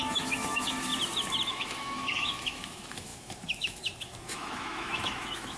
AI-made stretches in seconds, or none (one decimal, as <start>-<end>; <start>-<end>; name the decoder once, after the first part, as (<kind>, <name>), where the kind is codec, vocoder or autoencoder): 0.0-0.9 (autoencoder, DAC-VAE); 1.5-5.6